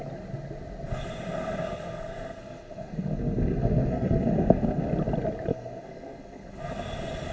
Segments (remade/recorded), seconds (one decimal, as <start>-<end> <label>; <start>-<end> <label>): 0.0-1.6 recorded; 1.6-4.9 remade; 4.9-5.5 recorded; 5.5-6.7 remade; 6.7-7.3 recorded